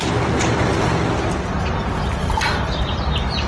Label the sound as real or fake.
real